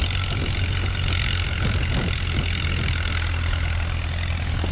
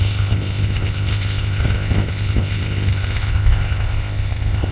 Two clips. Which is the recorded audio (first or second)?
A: first